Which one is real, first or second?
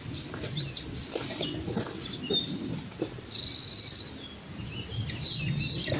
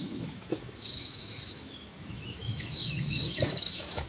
first